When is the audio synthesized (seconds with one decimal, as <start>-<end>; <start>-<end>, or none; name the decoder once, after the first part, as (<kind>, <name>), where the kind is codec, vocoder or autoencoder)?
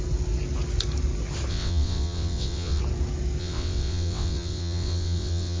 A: 1.5-2.8 (vocoder, WaveNeXt); 3.4-5.6